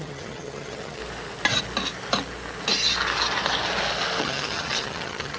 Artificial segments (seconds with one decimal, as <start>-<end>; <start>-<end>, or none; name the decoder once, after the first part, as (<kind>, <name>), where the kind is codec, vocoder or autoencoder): 0.0-1.0 (vocoder, HiFi-GAN); 4.2-5.4